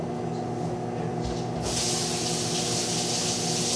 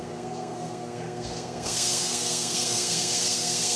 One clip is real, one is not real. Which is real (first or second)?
first